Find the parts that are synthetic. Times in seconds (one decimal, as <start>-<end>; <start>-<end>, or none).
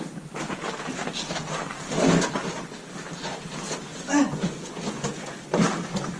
3.9-5.4